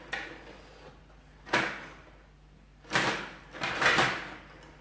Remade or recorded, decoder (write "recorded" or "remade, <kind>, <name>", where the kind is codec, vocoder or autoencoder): recorded